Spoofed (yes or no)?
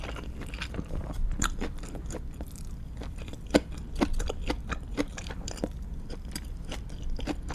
yes